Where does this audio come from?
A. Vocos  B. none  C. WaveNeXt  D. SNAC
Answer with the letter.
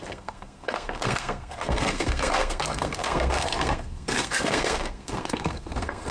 D